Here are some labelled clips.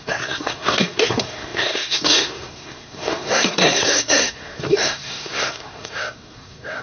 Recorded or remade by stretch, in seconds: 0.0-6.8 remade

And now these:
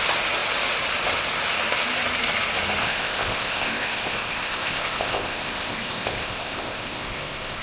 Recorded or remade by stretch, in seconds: 0.0-2.8 recorded; 2.8-7.6 remade

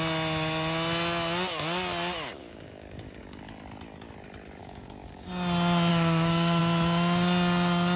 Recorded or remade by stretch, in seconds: 0.0-2.4 recorded; 2.4-3.2 remade; 3.2-4.6 recorded; 4.6-5.3 remade; 5.3-5.9 recorded; 5.9-6.6 remade; 6.6-8.0 recorded

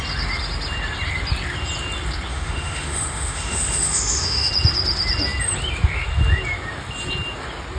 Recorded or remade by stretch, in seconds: 0.0-2.3 recorded; 2.3-4.5 remade; 4.5-7.8 recorded

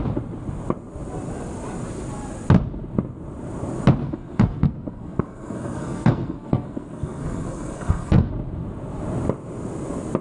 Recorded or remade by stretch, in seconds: 0.0-4.0 recorded; 4.0-8.3 remade; 8.3-10.2 recorded